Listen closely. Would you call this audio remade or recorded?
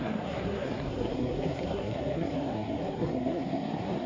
remade